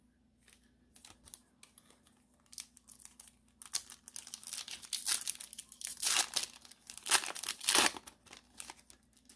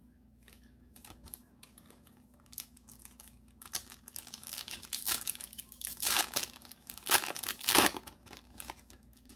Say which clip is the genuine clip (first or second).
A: first